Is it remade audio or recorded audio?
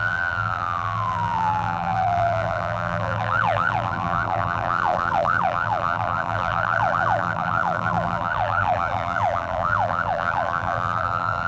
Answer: remade